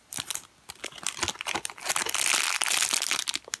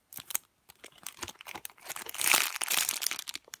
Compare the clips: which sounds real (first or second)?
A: first